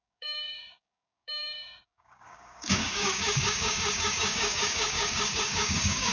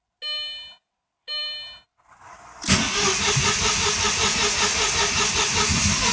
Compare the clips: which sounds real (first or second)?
second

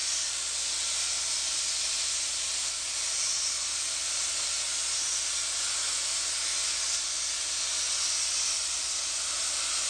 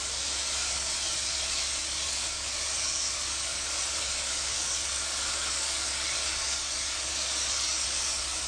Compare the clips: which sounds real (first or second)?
first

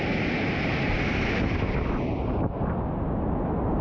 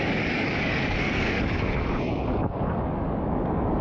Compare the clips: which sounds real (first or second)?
first